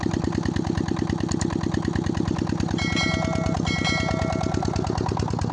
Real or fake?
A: real